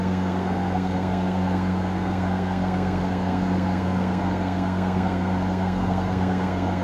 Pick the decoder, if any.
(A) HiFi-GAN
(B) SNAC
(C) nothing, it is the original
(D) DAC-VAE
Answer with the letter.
B